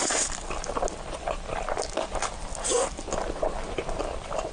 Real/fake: real